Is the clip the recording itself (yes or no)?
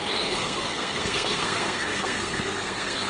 no